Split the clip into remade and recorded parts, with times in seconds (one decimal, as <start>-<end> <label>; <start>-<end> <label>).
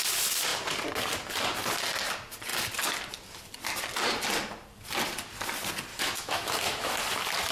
0.0-5.9 recorded; 5.9-7.0 remade; 7.0-7.5 recorded